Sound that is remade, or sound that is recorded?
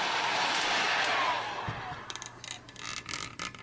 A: recorded